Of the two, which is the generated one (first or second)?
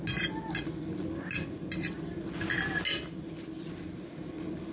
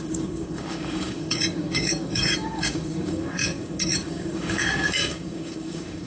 second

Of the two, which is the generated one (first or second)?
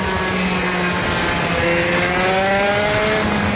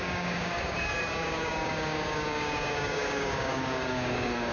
second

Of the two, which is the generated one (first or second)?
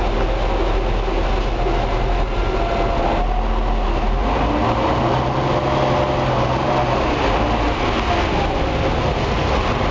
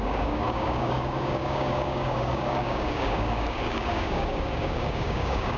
second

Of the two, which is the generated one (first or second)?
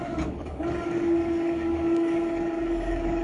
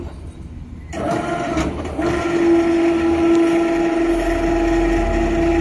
first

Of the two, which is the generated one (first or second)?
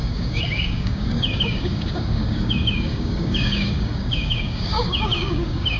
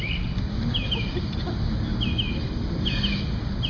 first